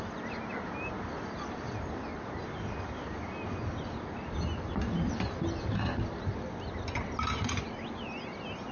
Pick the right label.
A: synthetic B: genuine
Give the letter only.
B